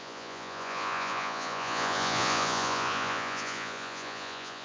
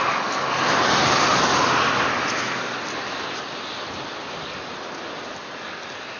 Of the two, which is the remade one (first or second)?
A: first